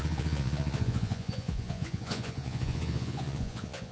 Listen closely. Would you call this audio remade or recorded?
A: remade